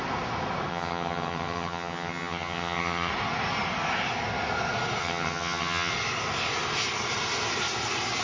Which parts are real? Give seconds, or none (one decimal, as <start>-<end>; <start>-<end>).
0.0-0.7; 3.1-5.0; 5.9-8.2